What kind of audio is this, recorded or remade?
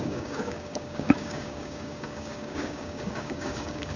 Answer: remade